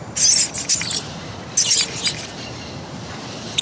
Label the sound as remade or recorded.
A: recorded